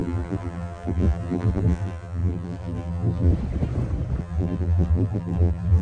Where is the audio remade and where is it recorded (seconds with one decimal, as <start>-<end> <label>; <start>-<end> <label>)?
0.0-3.3 remade; 3.3-4.2 recorded; 4.2-5.8 remade